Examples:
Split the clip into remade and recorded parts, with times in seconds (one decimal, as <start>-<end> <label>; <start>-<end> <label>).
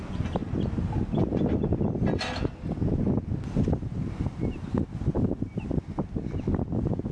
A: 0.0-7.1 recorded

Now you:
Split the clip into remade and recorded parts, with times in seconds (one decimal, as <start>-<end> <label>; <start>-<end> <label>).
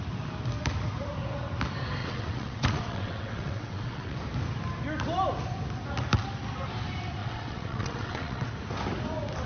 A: 0.0-2.0 recorded; 2.0-4.2 remade; 4.2-7.2 recorded; 7.2-8.5 remade; 8.5-9.5 recorded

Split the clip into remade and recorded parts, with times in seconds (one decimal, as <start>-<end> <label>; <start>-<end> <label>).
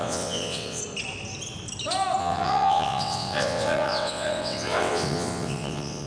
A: 0.0-0.8 remade; 0.8-2.2 recorded; 2.2-6.1 remade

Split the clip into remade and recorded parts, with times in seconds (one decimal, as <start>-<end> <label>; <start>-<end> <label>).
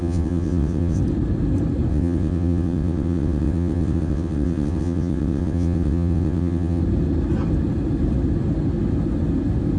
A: 0.0-1.0 remade; 1.0-1.9 recorded; 1.9-6.8 remade; 6.8-9.8 recorded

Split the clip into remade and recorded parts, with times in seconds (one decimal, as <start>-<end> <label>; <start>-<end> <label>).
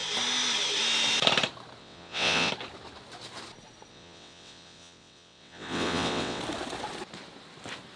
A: 0.0-1.8 recorded; 1.8-2.5 remade; 2.5-3.9 recorded; 3.9-6.4 remade; 6.4-8.0 recorded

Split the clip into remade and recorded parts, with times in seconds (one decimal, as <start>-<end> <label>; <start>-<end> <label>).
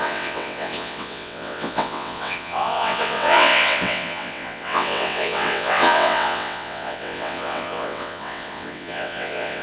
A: 0.0-9.6 remade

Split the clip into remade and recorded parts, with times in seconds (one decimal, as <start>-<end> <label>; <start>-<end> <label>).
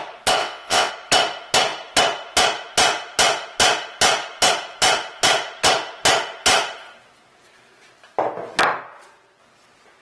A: 0.0-0.4 recorded; 0.4-0.9 remade; 0.9-10.0 recorded